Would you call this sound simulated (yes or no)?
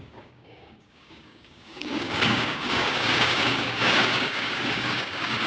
yes